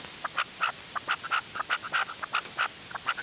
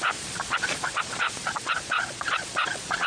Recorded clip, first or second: first